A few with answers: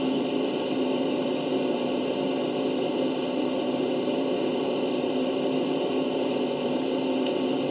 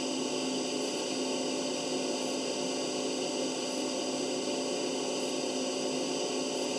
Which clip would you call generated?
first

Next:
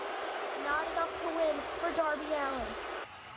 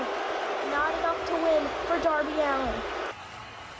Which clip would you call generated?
first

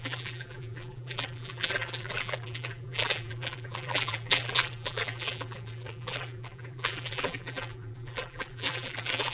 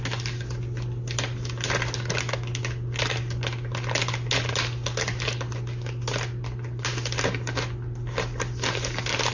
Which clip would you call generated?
first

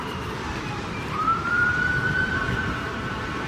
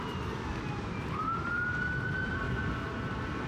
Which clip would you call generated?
first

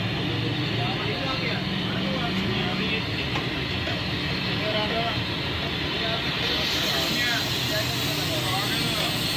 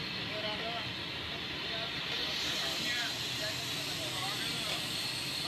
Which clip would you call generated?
second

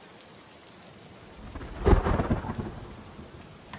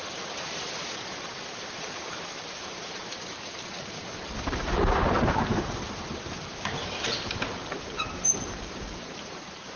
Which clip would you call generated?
second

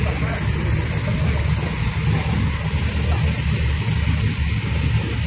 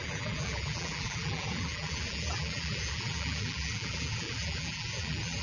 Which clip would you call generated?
second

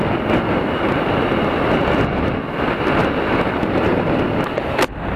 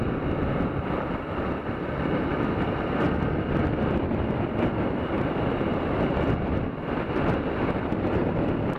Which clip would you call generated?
second